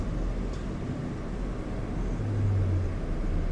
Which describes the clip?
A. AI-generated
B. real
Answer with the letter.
B